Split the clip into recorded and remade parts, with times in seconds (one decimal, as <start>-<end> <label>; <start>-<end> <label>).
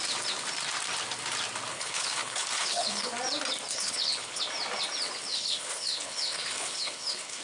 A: 0.0-1.7 recorded; 1.7-3.1 remade; 3.1-3.7 recorded; 3.7-4.4 remade; 4.4-5.3 recorded; 5.3-7.4 remade